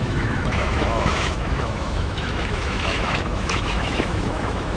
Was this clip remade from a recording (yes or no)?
yes